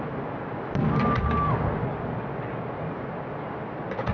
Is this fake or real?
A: real